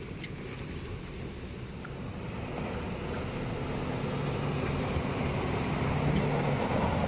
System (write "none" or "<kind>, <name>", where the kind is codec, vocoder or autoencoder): none